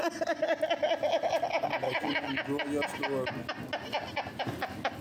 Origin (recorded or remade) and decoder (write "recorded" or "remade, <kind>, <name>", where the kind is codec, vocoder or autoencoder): recorded